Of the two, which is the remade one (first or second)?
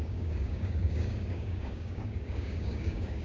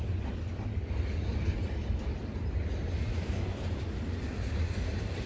first